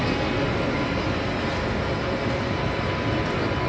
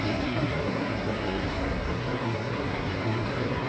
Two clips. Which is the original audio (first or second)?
first